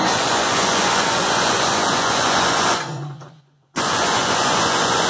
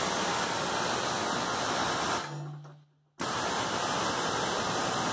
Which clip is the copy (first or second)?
first